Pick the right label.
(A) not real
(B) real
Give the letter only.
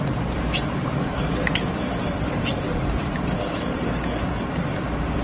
A